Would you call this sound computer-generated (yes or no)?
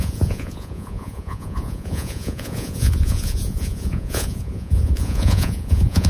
yes